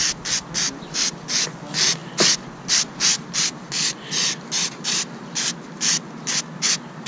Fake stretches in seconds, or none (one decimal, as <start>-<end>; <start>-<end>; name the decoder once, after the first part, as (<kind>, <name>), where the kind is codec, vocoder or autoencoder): none